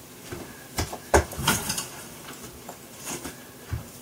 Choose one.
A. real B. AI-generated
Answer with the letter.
B